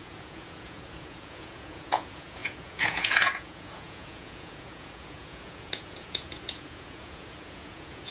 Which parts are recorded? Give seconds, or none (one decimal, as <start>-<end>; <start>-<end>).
none